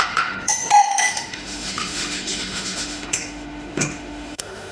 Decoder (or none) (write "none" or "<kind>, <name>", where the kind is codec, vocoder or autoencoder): autoencoder, DAC-VAE